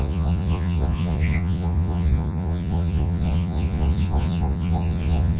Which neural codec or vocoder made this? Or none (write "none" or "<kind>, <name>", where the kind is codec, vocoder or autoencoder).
vocoder, Vocos